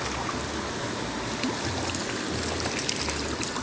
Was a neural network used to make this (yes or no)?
no